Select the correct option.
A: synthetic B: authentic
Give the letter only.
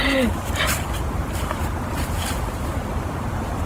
B